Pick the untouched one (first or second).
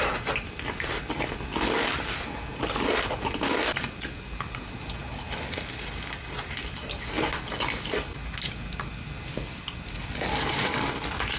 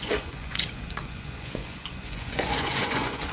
first